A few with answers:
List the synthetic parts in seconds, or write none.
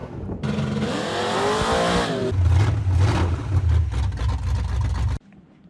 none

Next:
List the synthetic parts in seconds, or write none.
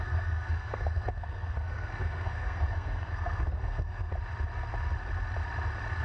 0.0-4.1 (codec, SNAC)